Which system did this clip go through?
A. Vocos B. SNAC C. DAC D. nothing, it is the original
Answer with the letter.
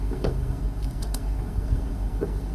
B